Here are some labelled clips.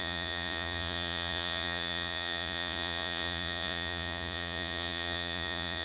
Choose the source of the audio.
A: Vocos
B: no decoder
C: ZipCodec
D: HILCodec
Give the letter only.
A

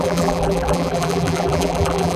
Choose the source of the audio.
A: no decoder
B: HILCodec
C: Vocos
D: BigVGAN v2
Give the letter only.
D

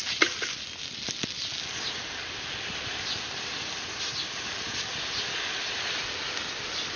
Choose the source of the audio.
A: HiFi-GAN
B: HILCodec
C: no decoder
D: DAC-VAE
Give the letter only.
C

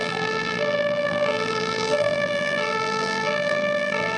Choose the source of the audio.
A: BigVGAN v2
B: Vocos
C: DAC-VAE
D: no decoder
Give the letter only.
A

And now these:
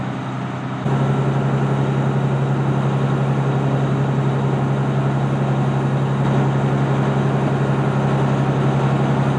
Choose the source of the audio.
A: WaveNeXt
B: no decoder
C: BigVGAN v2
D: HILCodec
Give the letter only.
B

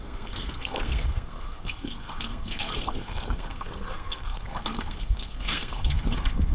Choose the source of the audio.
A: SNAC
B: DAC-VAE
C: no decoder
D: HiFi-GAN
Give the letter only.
A